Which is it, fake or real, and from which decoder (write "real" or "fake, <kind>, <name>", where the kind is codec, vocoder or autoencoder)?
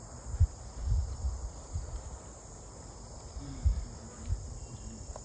real